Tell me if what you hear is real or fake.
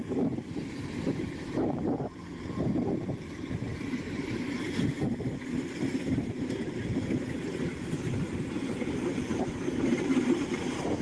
fake